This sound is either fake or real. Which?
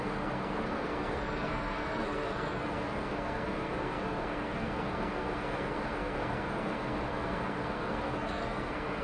fake